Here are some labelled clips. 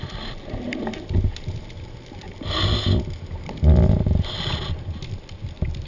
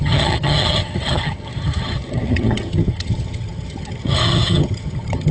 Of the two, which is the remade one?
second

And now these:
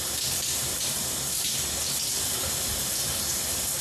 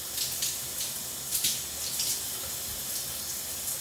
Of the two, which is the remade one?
first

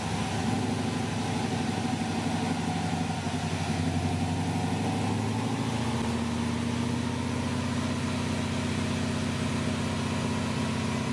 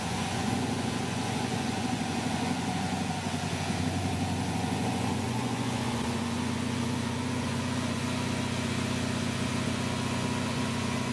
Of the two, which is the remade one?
second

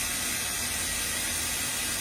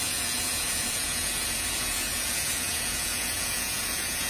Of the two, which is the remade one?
second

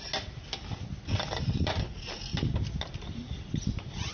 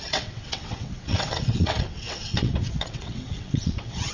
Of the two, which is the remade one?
second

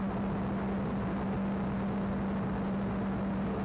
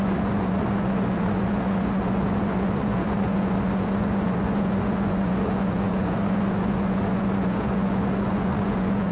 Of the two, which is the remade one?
second